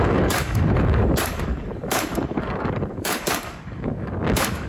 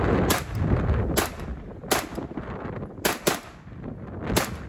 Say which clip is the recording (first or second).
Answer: second